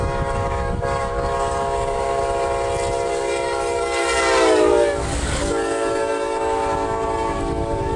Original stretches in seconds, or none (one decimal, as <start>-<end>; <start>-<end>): 2.2-3.1